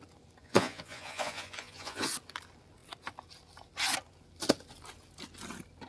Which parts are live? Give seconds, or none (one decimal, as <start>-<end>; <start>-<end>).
0.0-0.4; 2.1-5.9